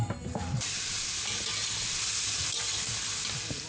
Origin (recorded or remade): recorded